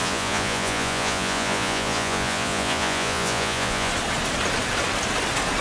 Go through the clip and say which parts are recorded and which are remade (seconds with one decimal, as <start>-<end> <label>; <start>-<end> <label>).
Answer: 0.0-3.9 remade; 3.9-5.6 recorded